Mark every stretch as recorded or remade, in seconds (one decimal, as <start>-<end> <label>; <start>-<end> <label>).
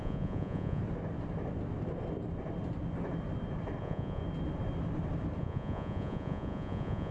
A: 0.0-0.8 remade; 0.8-3.8 recorded; 3.8-4.2 remade; 4.2-5.4 recorded; 5.4-7.1 remade